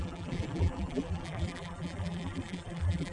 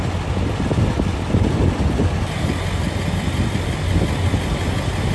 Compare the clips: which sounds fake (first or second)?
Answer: first